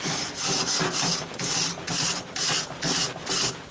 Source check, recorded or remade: recorded